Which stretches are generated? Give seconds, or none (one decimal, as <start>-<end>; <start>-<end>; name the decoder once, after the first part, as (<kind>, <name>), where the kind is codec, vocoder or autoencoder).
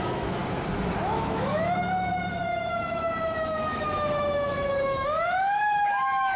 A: 0.0-0.4 (autoencoder, DAC-VAE); 1.0-6.4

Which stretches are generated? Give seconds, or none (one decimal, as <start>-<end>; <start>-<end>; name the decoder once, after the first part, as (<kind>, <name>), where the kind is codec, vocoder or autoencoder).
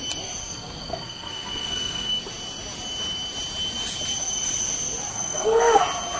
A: 0.4-2.2 (codec, SNAC); 5.1-5.8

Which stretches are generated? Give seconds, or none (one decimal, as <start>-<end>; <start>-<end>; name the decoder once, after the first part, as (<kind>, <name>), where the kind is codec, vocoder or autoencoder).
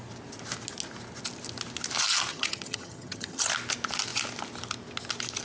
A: 2.3-3.5 (vocoder, HiFi-GAN)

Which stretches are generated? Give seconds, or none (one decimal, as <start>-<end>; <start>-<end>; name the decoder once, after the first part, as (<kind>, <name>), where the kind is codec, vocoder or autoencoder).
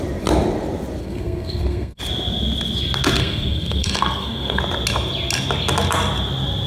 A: 1.0-2.0 (codec, SNAC); 3.2-4.6